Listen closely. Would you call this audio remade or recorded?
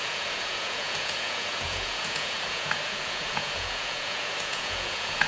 remade